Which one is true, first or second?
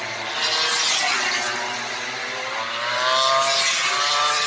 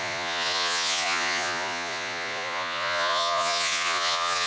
first